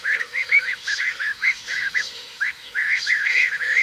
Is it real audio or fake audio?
fake